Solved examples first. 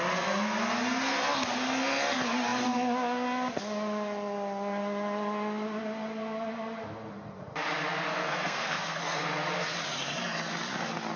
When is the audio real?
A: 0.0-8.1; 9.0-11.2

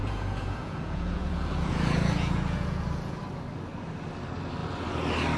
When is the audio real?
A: 3.2-5.4

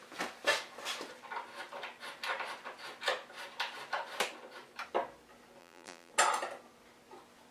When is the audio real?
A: 0.0-5.6; 6.1-7.5

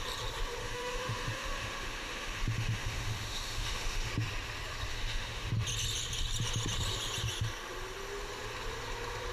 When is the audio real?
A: 0.0-0.6; 4.1-4.9; 5.5-9.3

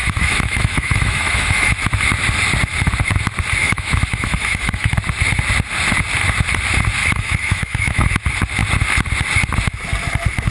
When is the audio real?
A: 1.7-3.6; 4.9-7.0; 8.1-10.5